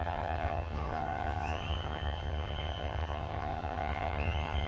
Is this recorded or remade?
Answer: remade